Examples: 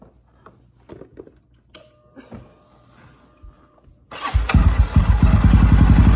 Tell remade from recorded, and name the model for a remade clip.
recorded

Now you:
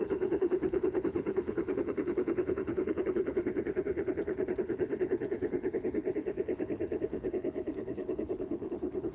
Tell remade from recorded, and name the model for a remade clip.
remade, codec, HILCodec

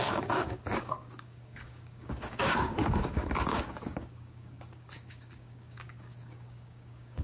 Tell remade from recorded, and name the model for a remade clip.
remade, codec, DAC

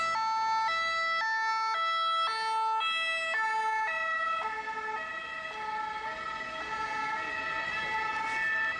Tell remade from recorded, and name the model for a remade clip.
recorded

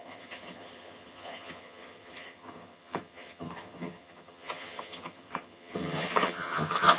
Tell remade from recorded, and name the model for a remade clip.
remade, vocoder, HiFi-GAN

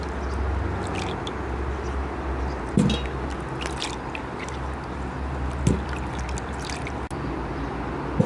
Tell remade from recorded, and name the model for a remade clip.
recorded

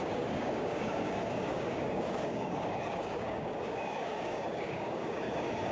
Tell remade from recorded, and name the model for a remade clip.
remade, codec, DAC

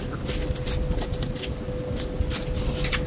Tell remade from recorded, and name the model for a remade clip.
recorded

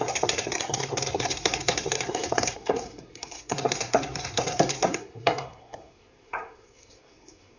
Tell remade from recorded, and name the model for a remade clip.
remade, codec, SNAC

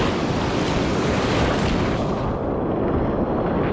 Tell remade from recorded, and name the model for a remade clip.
recorded